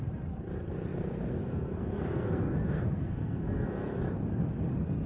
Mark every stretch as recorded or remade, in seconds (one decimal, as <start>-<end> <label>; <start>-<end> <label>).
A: 0.0-0.9 recorded; 0.9-4.0 remade; 4.0-5.1 recorded